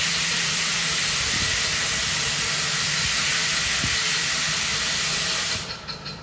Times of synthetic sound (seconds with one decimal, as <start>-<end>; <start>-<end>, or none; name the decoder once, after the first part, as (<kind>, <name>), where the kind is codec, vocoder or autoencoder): none